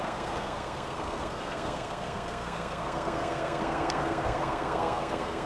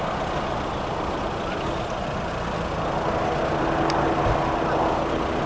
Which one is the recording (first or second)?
second